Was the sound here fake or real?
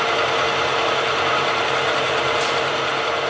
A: fake